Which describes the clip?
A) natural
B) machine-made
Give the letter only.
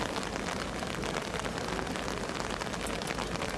A